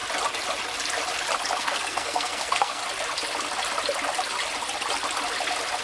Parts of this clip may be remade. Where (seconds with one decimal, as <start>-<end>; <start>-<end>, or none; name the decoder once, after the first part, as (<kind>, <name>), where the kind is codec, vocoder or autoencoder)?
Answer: 1.6-2.8 (codec, SNAC)

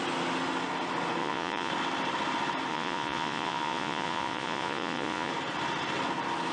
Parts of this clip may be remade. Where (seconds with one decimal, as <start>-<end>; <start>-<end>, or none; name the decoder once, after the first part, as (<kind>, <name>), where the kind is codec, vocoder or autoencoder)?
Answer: 1.2-1.7 (vocoder, Vocos); 2.7-5.3

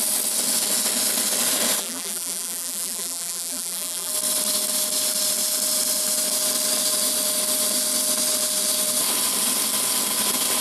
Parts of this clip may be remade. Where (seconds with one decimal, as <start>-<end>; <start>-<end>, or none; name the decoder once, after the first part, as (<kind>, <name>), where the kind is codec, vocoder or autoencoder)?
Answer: 1.8-4.1 (vocoder, BigVGAN v2)